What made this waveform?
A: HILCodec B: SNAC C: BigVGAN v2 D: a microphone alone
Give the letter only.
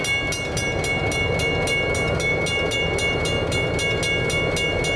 D